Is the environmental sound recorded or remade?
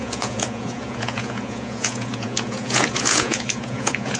remade